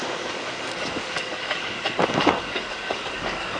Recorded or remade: remade